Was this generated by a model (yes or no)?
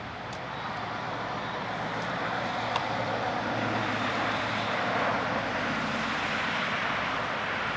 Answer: yes